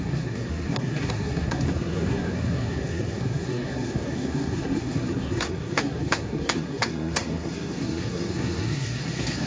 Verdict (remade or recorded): remade